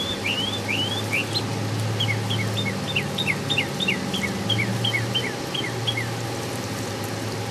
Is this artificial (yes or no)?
no